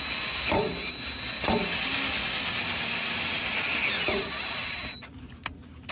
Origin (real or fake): real